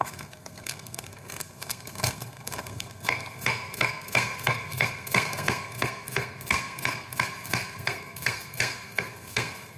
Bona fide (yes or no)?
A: no